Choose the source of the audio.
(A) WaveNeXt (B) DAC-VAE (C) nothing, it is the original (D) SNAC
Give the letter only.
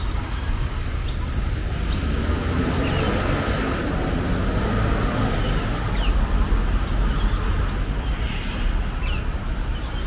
C